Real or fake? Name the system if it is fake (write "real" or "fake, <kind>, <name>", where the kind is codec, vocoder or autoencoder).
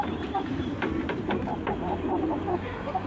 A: fake, vocoder, BigVGAN v2